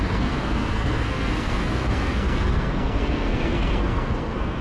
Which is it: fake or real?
fake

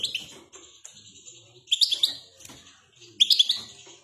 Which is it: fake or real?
real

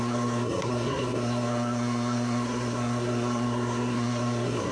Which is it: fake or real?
fake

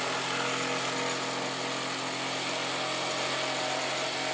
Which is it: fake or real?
real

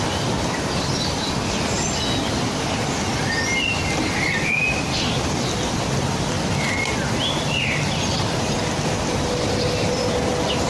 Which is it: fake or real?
real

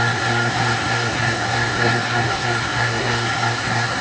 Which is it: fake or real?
fake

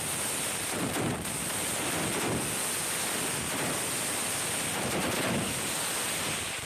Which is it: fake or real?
real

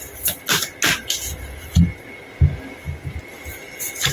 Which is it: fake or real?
real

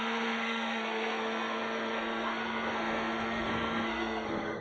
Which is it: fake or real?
fake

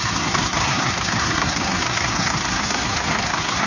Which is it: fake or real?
fake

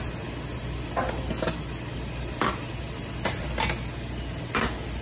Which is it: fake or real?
real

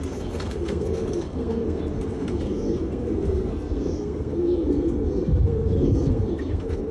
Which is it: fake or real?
fake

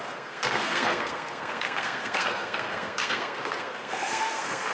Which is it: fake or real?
fake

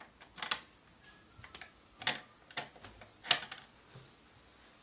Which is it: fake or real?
real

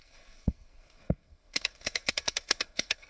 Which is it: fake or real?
fake